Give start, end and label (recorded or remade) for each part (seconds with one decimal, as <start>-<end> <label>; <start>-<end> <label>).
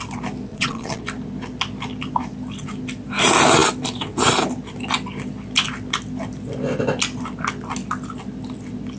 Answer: 0.0-0.5 recorded; 0.5-1.0 remade; 1.0-9.0 recorded